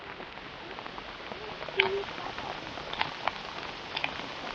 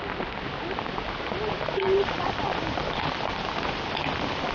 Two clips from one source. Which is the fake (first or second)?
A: second